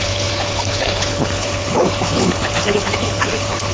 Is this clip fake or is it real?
fake